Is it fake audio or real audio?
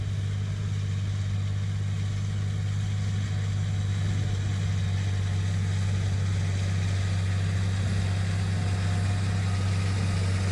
real